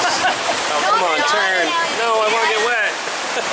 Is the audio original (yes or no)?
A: yes